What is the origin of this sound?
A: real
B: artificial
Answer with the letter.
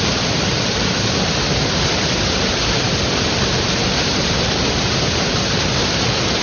A